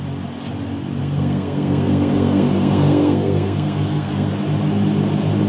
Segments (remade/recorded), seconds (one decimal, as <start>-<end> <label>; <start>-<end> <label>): 0.0-1.0 recorded; 1.0-4.3 remade; 4.3-5.5 recorded